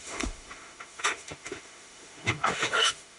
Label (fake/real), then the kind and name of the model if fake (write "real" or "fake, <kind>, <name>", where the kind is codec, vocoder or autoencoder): fake, autoencoder, DAC-VAE